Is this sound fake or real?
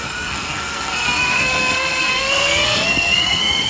fake